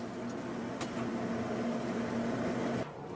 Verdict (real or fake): real